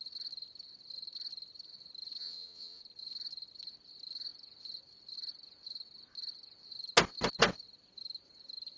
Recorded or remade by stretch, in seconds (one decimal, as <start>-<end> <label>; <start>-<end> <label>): 0.0-2.2 recorded; 2.2-2.8 remade; 2.8-8.8 recorded